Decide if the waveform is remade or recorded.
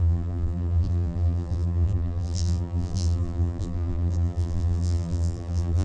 remade